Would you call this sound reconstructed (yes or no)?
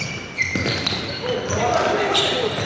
no